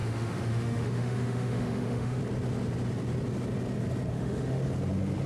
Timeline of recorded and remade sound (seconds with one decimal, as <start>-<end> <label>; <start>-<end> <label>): 0.0-2.2 remade; 2.2-4.1 recorded; 4.1-4.6 remade; 4.6-5.3 recorded